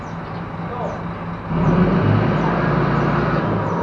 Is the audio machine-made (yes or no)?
no